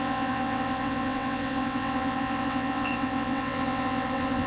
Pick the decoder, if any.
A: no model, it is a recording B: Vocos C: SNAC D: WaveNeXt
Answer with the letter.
D